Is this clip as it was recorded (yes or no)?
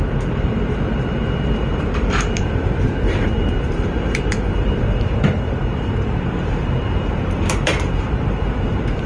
no